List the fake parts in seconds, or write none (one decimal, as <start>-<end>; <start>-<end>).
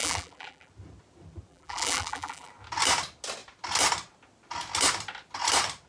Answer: 0.0-0.7; 1.5-2.5